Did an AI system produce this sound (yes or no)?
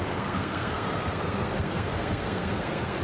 yes